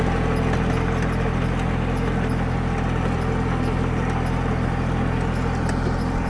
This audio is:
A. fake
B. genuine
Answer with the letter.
B